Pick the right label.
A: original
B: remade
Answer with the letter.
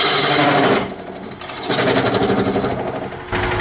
A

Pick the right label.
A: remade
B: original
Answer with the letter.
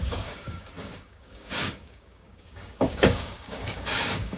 A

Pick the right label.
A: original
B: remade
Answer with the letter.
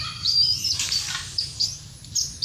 B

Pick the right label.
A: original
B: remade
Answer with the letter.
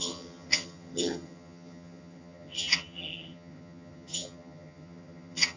B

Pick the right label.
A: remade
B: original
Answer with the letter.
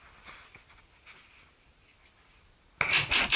B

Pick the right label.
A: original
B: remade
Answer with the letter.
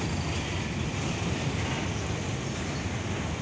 A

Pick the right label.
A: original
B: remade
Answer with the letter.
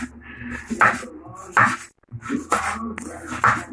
A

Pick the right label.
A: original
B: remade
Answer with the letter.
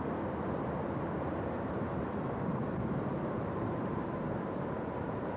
B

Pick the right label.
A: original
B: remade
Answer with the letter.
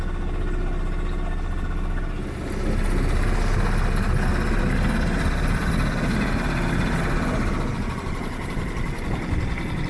A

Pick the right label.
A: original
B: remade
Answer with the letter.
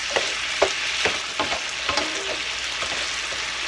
A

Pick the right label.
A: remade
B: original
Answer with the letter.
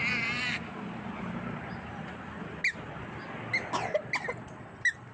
B